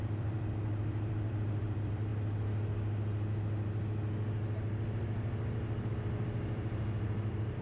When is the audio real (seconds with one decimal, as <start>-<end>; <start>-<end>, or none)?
2.1-5.9